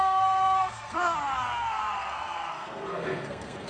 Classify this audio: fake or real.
fake